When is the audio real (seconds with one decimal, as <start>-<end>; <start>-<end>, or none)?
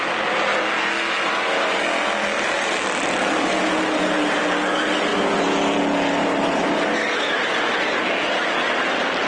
0.0-9.3